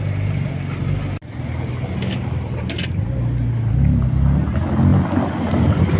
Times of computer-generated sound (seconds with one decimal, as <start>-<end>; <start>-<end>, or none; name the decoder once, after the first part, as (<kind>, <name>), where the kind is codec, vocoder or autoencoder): none